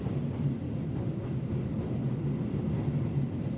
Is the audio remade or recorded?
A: recorded